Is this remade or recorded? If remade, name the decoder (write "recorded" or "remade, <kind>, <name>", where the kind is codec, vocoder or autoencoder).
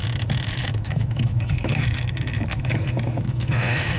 remade, autoencoder, DAC-VAE